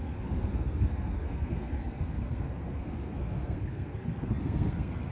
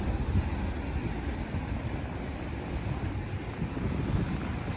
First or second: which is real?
second